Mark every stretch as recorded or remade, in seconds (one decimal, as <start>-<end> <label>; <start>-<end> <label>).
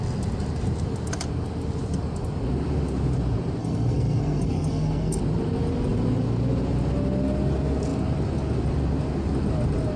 0.0-3.6 recorded; 3.6-5.2 remade; 5.2-10.0 recorded